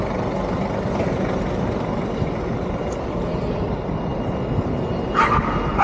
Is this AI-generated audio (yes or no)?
no